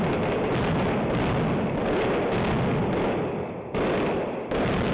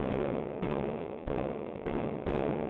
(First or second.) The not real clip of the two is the second